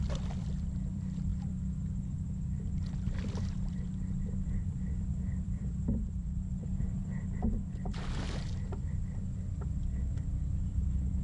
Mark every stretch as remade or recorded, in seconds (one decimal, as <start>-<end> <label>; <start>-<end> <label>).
0.0-7.0 remade; 7.0-10.1 recorded; 10.1-11.2 remade